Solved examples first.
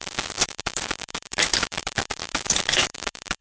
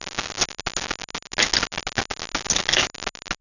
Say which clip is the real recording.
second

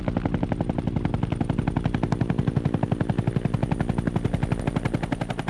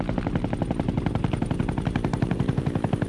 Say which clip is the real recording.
first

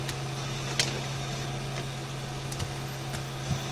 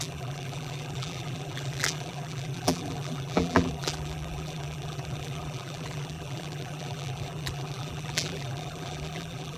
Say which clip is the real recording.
first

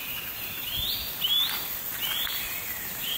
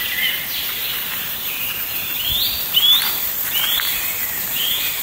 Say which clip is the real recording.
first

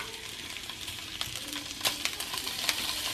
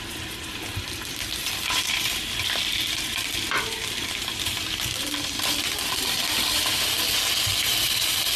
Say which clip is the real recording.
first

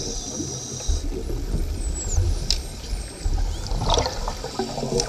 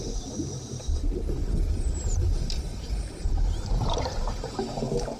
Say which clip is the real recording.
first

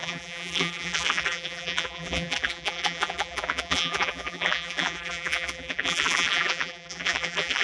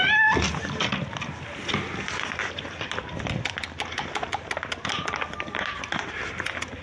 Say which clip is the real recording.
second